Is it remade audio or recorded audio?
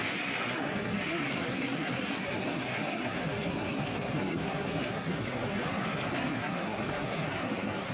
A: remade